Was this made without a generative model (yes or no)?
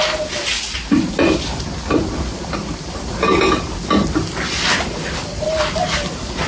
yes